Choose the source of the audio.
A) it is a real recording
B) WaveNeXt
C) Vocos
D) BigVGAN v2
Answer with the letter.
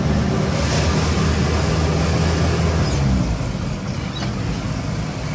A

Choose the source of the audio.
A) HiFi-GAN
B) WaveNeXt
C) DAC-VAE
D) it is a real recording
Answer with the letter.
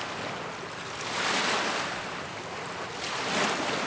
D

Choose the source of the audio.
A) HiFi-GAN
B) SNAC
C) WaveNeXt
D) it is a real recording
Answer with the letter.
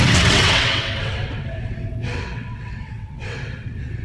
C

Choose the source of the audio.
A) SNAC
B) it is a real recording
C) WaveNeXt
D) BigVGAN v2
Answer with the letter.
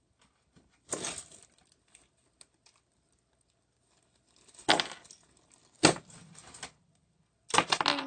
B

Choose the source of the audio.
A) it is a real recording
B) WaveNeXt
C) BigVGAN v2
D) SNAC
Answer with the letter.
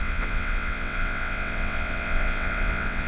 B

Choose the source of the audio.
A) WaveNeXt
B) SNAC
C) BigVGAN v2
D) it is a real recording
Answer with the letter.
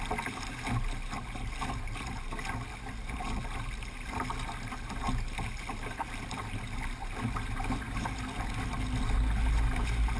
D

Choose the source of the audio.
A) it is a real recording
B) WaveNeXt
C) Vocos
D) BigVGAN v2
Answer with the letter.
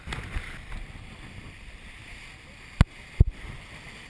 A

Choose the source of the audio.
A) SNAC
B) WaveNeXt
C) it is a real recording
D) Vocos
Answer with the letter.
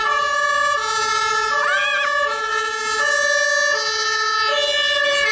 C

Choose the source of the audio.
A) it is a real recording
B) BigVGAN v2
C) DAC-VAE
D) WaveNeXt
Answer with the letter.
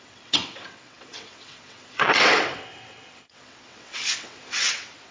D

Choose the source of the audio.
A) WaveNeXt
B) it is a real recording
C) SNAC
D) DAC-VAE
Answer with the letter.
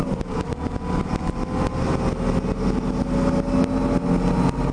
B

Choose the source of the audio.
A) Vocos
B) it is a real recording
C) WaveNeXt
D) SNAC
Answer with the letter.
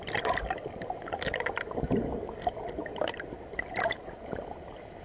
B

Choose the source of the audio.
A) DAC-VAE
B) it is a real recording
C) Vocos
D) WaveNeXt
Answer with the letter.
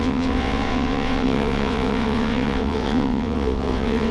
D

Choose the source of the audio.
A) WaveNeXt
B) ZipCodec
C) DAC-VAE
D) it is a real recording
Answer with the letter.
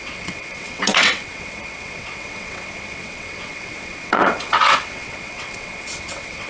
A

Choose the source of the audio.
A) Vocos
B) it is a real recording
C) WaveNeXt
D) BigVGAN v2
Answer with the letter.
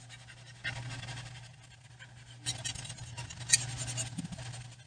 B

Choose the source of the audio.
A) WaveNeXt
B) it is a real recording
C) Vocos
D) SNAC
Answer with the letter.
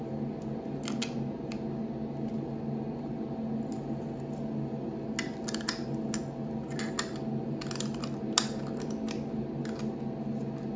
B